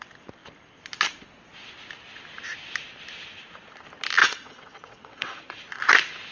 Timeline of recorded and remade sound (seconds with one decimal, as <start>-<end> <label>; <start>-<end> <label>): 0.0-4.2 recorded; 4.2-5.6 remade; 5.6-6.3 recorded